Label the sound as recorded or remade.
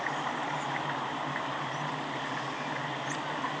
recorded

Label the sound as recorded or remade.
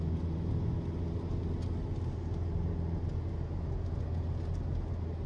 recorded